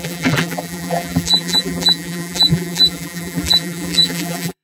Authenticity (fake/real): fake